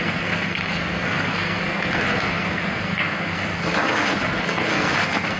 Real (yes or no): no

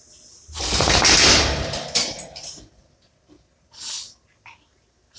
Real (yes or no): yes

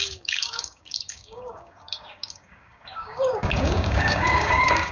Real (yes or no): no